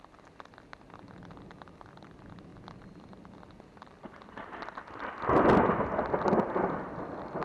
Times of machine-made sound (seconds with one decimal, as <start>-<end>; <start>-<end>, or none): none